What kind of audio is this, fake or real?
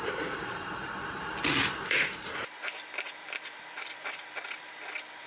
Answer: real